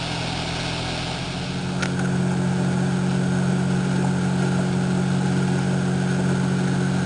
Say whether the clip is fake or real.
real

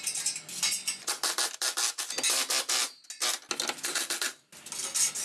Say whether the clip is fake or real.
real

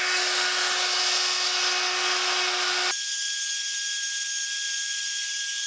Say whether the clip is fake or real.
real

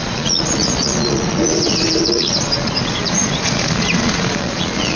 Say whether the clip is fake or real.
fake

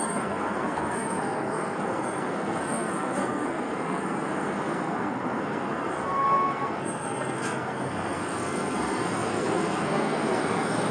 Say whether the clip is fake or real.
fake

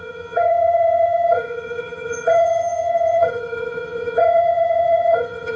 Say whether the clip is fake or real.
fake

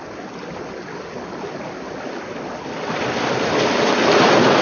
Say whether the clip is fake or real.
real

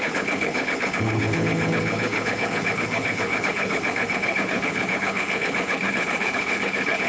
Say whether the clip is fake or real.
fake